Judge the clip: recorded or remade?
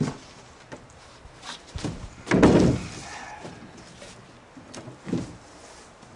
recorded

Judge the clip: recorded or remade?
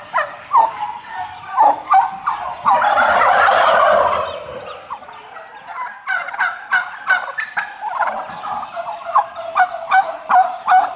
recorded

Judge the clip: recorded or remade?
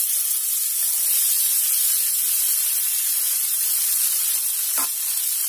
recorded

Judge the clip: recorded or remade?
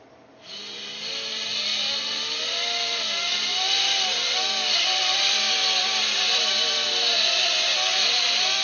recorded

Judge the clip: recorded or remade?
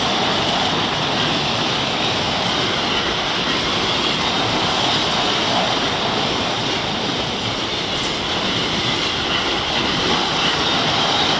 recorded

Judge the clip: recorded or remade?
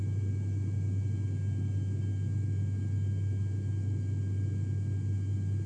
recorded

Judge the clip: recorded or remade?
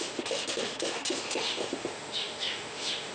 remade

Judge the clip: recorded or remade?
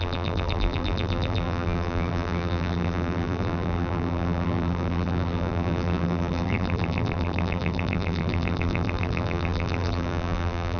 remade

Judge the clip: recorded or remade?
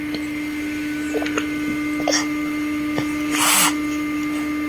recorded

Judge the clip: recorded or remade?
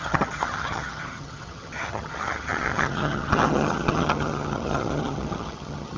remade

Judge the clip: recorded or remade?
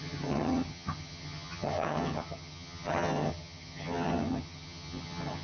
remade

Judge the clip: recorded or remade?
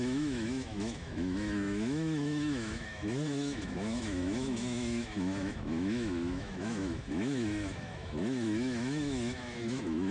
remade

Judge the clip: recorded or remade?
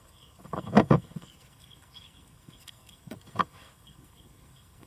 remade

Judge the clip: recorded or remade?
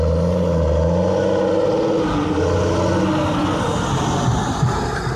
recorded